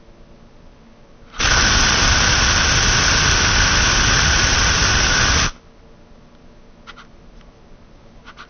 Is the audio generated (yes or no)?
no